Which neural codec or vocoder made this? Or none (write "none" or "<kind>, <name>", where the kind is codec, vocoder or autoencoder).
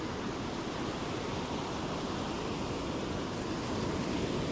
none